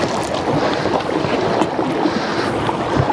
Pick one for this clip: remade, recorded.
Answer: recorded